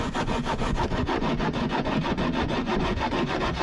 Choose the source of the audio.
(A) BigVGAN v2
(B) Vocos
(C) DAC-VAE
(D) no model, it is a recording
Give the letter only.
B